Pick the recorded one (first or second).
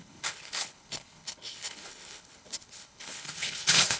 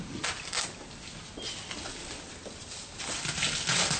second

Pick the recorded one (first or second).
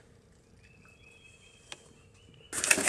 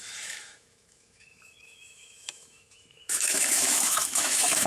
first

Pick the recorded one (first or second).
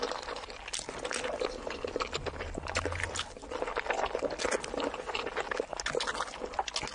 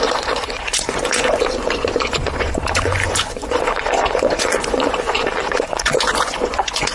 first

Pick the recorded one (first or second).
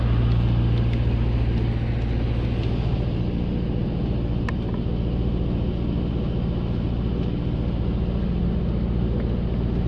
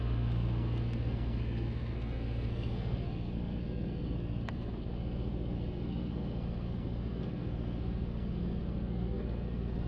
first